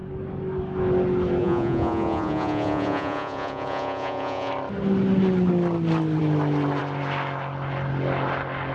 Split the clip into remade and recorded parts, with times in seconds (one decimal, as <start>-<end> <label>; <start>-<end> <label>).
0.0-1.4 recorded; 1.4-4.5 remade; 4.5-8.7 recorded